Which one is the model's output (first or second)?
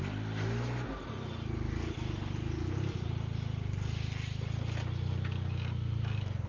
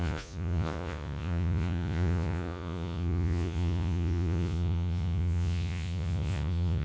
second